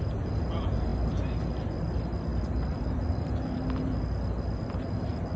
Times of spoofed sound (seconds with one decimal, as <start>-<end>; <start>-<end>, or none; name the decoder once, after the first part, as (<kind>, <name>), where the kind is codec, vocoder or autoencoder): none